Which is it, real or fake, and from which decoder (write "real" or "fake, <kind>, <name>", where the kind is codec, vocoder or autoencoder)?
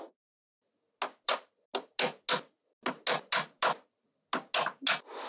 real